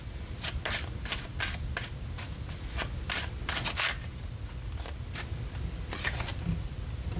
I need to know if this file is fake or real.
real